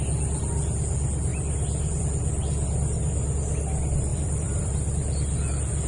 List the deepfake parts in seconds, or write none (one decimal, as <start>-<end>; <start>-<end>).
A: 1.3-2.0; 4.1-4.7